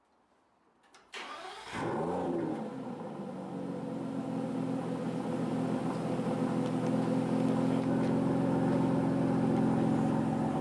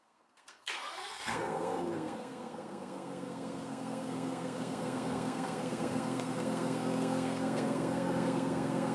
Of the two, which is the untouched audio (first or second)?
first